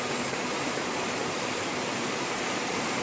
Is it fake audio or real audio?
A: fake